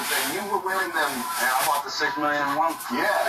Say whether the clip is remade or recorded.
remade